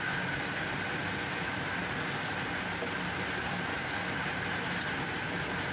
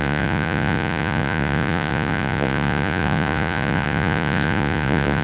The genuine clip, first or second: first